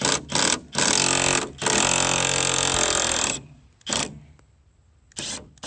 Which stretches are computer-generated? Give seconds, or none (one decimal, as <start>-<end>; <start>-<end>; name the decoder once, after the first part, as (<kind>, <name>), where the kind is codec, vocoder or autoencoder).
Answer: none